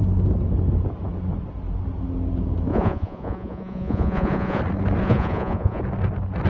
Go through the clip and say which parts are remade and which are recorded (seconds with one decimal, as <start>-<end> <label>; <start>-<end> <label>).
0.0-2.7 recorded; 2.7-4.6 remade; 4.6-5.0 recorded; 5.0-5.8 remade; 5.8-6.5 recorded